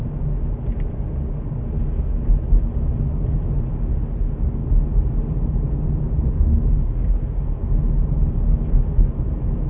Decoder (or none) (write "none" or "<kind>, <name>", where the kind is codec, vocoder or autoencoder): none